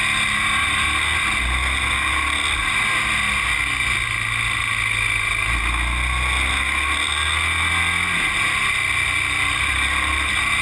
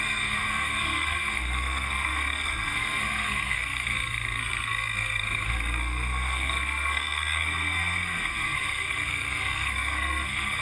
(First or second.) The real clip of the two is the first